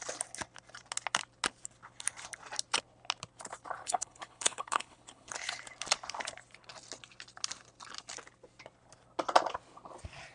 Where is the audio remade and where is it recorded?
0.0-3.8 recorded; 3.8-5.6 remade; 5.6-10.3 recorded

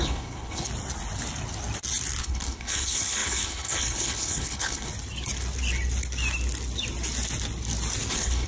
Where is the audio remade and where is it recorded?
0.0-0.7 remade; 0.7-2.2 recorded; 2.2-4.9 remade; 4.9-8.1 recorded; 8.1-8.5 remade

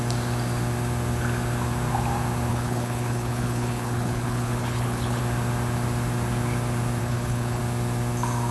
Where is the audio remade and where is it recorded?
0.0-2.5 recorded; 2.5-5.2 remade; 5.2-7.0 recorded; 7.0-7.6 remade; 7.6-8.5 recorded

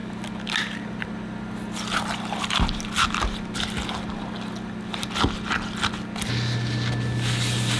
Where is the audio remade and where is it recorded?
0.0-7.8 recorded

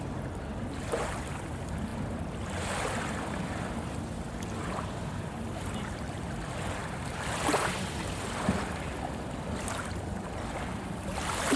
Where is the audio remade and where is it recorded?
0.0-11.6 recorded